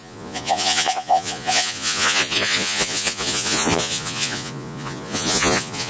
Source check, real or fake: fake